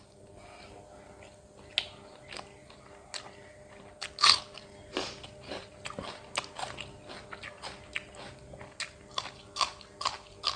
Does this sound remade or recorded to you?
recorded